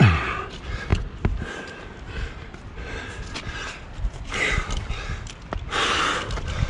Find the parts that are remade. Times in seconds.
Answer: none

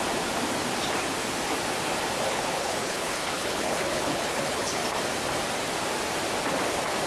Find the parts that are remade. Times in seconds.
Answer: 2.3-4.8 (codec, HILCodec)

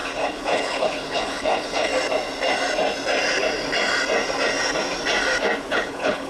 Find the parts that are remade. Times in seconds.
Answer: 0.0-1.9 (codec, HILCodec); 5.7-6.3

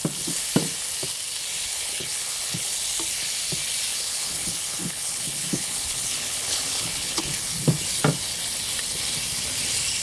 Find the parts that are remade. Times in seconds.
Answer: 1.7-2.7 (codec, HILCodec); 3.9-7.2

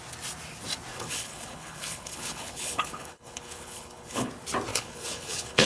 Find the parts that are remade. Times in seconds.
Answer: 0.9-4.3 (codec, HILCodec); 4.7-5.7

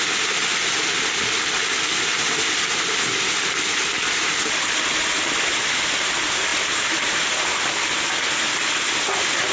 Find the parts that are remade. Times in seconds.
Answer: none

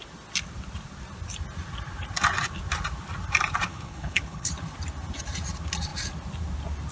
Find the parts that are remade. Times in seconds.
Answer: 3.7-4.5 (codec, HILCodec)

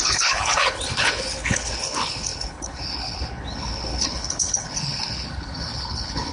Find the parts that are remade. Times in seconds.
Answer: 0.0-6.3 (codec, HILCodec)